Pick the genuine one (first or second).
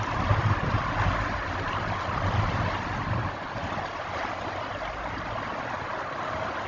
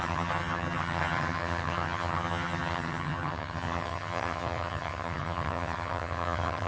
first